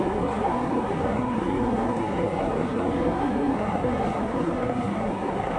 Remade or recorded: remade